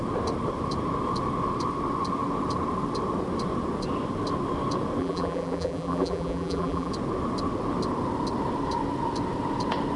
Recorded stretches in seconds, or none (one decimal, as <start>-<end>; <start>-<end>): 0.0-5.0; 6.9-10.0